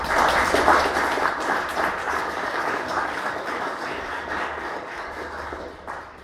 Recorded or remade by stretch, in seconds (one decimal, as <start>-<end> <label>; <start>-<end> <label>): 0.0-2.0 recorded; 2.0-5.6 remade; 5.6-6.2 recorded